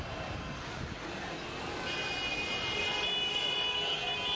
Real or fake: real